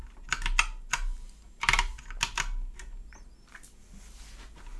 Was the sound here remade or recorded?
recorded